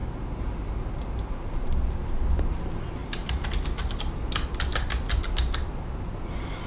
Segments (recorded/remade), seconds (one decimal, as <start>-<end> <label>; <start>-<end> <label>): 0.0-6.7 recorded

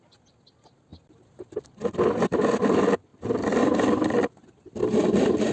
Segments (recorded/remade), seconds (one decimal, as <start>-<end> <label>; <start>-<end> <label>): 0.0-0.9 recorded; 0.9-2.3 remade; 2.3-4.8 recorded; 4.8-5.5 remade

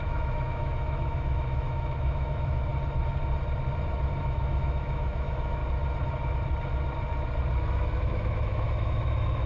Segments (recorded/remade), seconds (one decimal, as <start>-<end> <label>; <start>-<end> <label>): 0.0-2.7 remade; 2.7-4.2 recorded; 4.2-5.6 remade; 5.6-8.0 recorded; 8.0-9.5 remade

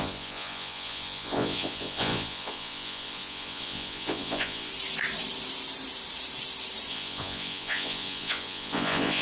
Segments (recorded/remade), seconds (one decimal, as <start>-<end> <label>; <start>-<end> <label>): 0.0-4.7 remade; 4.7-6.9 recorded; 6.9-9.2 remade

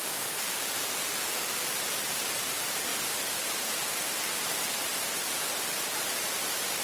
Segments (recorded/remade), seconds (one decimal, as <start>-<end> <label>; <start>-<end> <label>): 0.0-2.9 remade; 2.9-3.5 recorded; 3.5-4.9 remade; 4.9-5.7 recorded; 5.7-6.8 remade